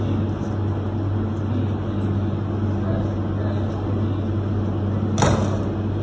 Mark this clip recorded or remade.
recorded